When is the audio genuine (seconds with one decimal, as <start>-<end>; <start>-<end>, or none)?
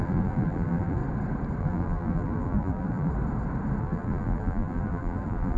1.0-1.6; 3.1-3.8